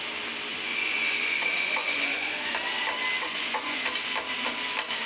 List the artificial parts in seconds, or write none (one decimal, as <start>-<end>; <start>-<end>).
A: 0.5-2.5; 3.2-3.8